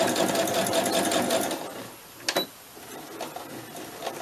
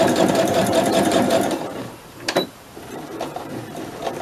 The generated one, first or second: second